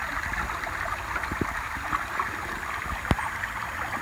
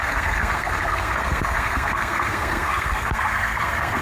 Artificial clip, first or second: second